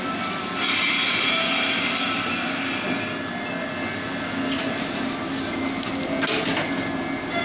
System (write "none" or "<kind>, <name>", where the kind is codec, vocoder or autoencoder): none